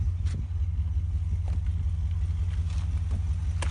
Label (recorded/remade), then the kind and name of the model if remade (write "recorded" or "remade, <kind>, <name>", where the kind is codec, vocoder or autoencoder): recorded